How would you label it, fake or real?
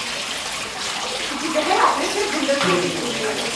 real